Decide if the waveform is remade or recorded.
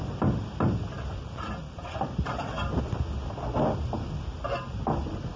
recorded